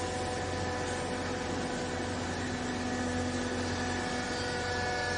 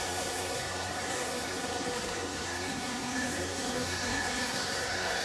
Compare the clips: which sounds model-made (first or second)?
second